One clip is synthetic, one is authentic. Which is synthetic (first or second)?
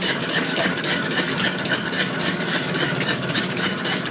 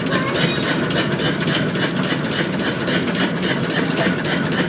first